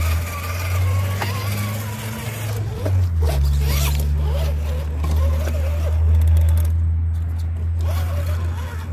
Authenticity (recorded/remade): recorded